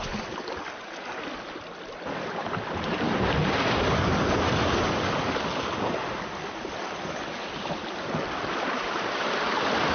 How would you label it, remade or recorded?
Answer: recorded